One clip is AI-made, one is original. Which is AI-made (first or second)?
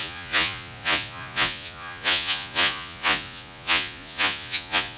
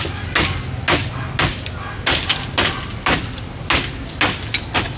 first